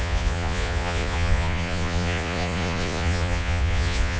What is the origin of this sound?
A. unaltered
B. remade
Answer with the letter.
B